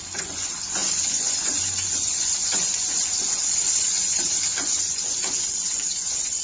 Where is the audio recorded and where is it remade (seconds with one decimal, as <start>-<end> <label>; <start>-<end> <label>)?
0.0-6.4 remade